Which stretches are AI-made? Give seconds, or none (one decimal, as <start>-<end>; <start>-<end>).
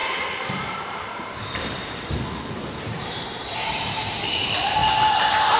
0.0-4.8